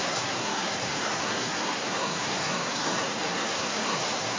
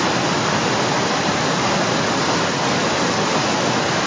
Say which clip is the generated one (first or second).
first